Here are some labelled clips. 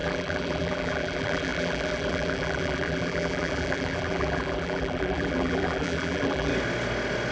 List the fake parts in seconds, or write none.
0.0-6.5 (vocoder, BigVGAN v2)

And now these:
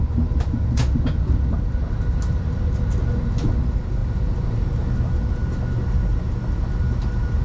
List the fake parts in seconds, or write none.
2.1-2.8 (vocoder, BigVGAN v2); 4.0-5.5

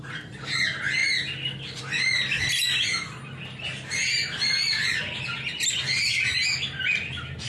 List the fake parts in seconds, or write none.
none

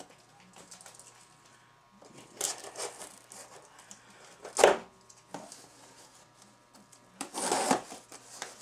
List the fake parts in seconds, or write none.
1.5-3.9 (vocoder, BigVGAN v2)

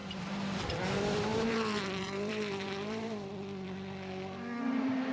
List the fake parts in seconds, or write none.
0.0-0.6 (vocoder, BigVGAN v2); 1.3-3.3

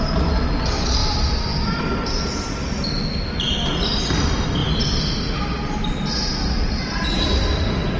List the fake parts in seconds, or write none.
1.0-1.8 (vocoder, BigVGAN v2)

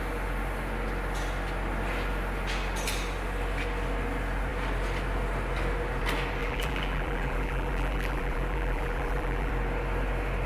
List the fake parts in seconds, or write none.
6.4-9.5 (vocoder, BigVGAN v2)